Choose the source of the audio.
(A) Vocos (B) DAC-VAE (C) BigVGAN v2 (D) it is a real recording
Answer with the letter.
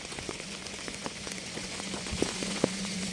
A